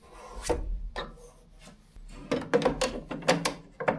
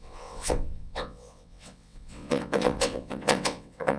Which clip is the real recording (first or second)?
first